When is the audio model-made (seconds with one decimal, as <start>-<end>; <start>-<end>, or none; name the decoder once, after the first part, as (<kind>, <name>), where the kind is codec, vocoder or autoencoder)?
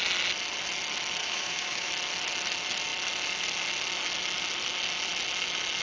1.2-1.9 (autoencoder, DAC-VAE)